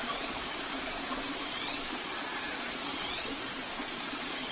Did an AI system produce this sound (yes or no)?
yes